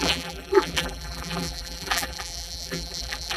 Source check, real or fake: fake